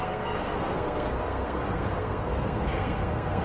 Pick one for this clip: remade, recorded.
remade